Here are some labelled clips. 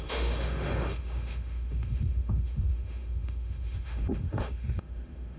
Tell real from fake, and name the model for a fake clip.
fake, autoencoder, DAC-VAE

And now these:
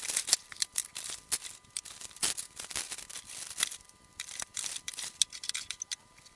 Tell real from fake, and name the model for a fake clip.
real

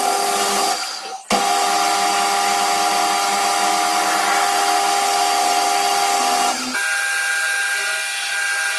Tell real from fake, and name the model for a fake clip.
real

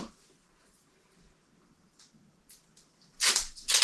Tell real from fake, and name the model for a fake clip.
real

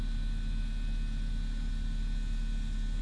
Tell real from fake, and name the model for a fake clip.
real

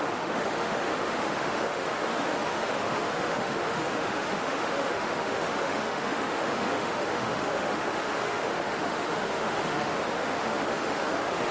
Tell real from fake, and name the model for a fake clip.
fake, autoencoder, DAC-VAE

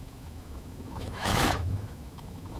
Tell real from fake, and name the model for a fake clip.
fake, autoencoder, DAC-VAE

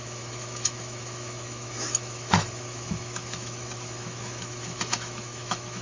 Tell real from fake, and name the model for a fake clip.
fake, autoencoder, DAC-VAE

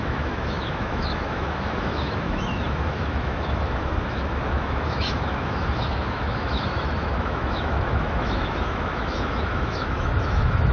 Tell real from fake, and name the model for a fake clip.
fake, autoencoder, DAC-VAE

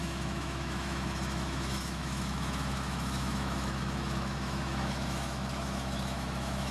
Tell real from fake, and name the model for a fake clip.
fake, autoencoder, DAC-VAE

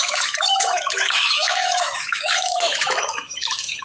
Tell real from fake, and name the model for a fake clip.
fake, autoencoder, DAC-VAE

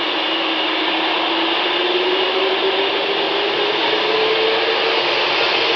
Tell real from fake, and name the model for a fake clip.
real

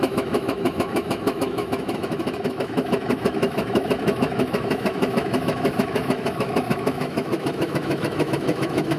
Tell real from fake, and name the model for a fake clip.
fake, autoencoder, DAC-VAE